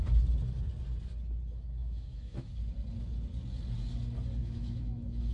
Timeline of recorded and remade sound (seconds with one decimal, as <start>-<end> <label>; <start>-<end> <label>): 0.0-1.8 recorded; 1.8-2.5 remade; 2.5-4.4 recorded; 4.4-5.3 remade